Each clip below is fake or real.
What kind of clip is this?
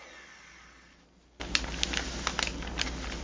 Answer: real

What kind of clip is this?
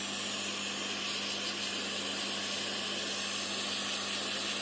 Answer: real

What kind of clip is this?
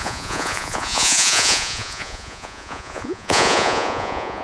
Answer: fake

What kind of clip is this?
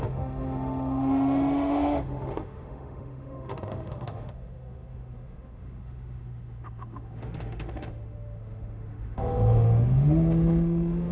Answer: fake